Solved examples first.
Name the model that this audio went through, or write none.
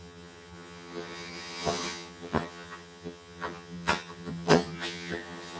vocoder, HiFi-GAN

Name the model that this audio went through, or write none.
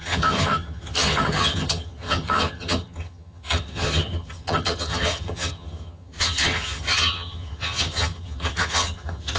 vocoder, HiFi-GAN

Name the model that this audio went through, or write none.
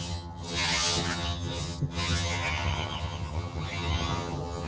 vocoder, HiFi-GAN